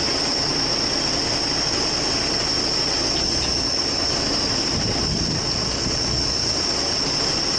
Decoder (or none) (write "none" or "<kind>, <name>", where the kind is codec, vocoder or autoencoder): none